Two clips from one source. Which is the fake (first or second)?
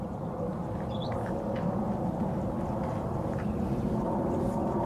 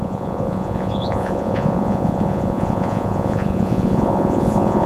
second